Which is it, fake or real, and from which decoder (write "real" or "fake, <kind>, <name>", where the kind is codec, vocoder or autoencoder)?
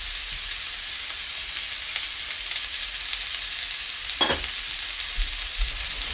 real